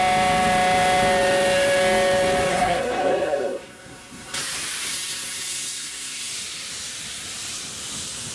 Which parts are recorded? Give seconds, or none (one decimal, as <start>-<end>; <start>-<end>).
0.0-2.5; 4.4-4.9; 6.3-8.3